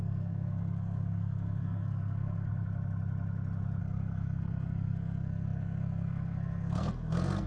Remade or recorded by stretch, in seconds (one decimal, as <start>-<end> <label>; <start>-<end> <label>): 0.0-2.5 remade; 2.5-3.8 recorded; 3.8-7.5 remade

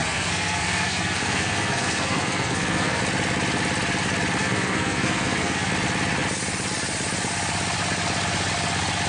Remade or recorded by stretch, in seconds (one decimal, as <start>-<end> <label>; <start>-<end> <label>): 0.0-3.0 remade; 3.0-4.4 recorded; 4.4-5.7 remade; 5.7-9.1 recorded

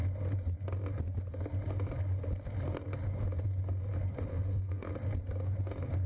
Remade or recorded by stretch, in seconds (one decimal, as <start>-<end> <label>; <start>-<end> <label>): 0.0-4.3 recorded; 4.3-4.9 remade; 4.9-6.1 recorded

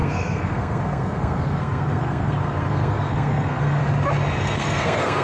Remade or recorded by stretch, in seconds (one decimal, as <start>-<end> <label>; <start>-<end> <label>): 0.0-3.8 remade; 3.8-4.4 recorded; 4.4-5.2 remade

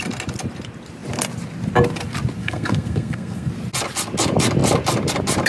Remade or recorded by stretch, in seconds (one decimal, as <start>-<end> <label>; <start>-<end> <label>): 0.0-2.4 recorded; 2.4-3.5 remade; 3.5-5.5 recorded